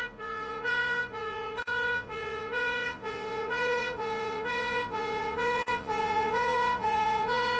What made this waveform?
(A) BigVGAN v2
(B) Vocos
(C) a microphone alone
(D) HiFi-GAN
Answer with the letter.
B